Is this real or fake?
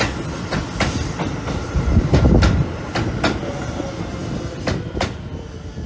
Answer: real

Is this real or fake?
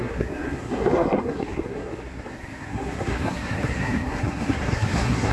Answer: fake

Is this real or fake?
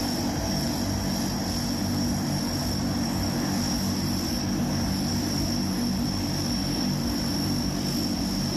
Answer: real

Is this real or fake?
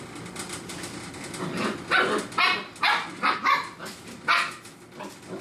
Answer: real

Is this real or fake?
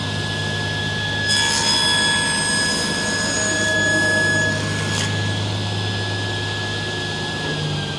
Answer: real